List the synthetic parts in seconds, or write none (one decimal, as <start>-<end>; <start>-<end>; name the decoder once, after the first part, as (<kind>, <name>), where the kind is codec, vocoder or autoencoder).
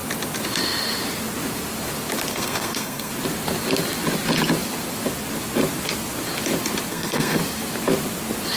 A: 2.3-3.1 (codec, SNAC); 6.9-7.4